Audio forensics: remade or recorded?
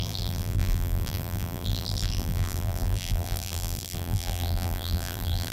remade